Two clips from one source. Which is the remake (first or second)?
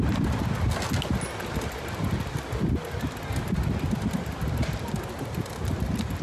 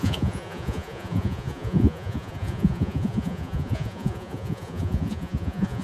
second